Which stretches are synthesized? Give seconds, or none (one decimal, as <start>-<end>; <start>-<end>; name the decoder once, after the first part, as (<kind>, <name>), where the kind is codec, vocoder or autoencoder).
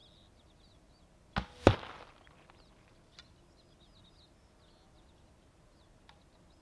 none